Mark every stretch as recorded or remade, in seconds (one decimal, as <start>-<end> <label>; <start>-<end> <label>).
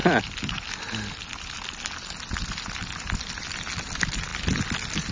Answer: 0.0-5.1 recorded